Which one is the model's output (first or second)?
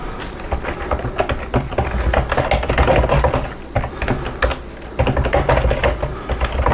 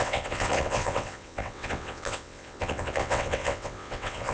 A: second